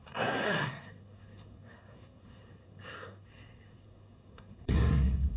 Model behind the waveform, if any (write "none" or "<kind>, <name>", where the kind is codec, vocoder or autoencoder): codec, SNAC